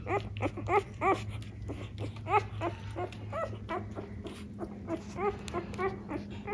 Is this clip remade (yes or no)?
no